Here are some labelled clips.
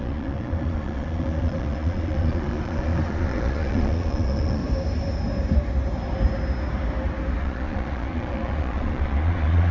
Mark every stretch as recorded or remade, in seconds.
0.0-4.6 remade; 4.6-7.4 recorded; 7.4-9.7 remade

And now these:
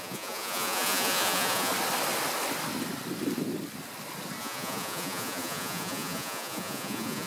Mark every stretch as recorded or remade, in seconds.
0.0-1.7 remade; 1.7-4.4 recorded; 4.4-7.3 remade

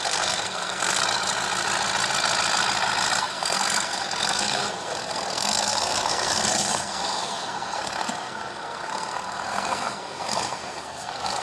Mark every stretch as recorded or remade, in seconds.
0.0-1.0 remade; 1.0-3.2 recorded; 3.2-11.4 remade

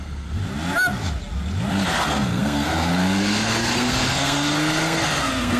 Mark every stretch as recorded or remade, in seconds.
0.0-0.4 remade; 0.4-1.7 recorded; 1.7-5.6 remade